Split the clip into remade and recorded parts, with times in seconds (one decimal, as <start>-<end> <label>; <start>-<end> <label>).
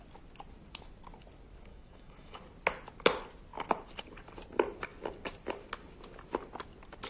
0.0-1.7 recorded; 1.7-2.4 remade; 2.4-7.1 recorded